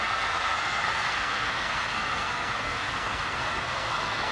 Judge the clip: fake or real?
fake